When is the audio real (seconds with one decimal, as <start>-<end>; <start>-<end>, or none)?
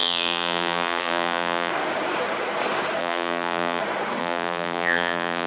1.7-3.0; 3.8-4.2